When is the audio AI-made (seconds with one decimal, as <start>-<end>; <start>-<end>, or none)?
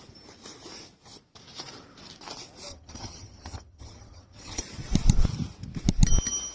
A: 2.7-4.6